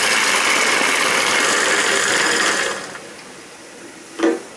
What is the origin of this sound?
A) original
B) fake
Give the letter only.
A